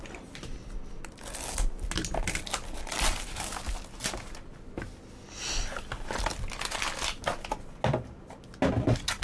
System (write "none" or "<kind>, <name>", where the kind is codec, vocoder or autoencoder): none